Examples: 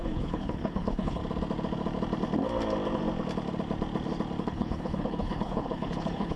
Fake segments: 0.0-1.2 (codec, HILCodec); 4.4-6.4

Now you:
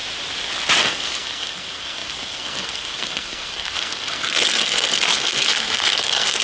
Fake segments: 0.8-6.4 (codec, SNAC)

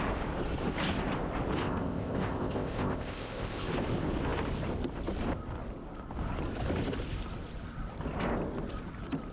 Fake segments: 1.6-3.7 (codec, ZipCodec)

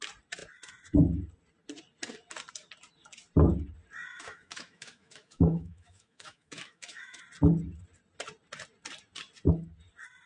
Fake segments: 4.1-7.2 (autoencoder, DAC-VAE)

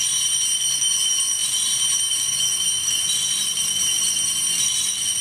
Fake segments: none

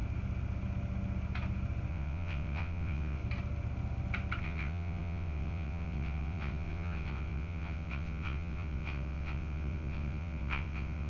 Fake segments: 1.9-3.2 (vocoder, WaveNeXt); 4.4-11.1